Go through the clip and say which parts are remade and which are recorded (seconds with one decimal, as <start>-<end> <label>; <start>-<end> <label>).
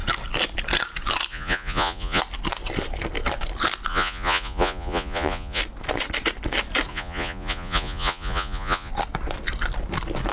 0.0-1.3 recorded; 1.3-2.2 remade; 2.2-3.9 recorded; 3.9-5.6 remade; 5.6-6.9 recorded; 6.9-8.9 remade; 8.9-10.3 recorded